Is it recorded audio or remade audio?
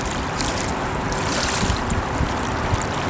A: remade